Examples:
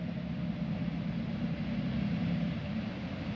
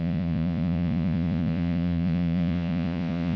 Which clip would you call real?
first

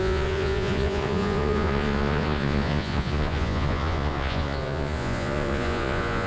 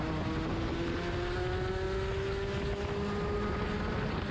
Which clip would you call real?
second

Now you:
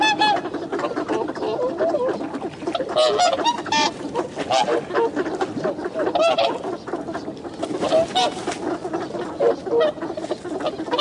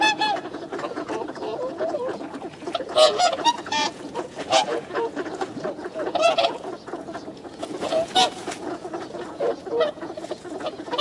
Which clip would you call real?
first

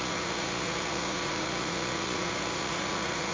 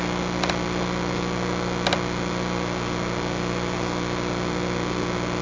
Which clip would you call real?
second